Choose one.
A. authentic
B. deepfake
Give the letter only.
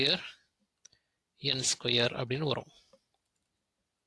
A